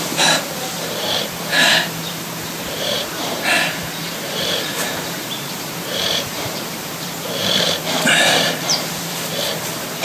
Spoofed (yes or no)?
yes